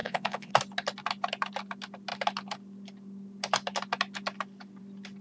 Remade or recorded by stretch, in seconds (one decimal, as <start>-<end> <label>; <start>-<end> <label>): 0.0-0.5 remade; 0.5-5.2 recorded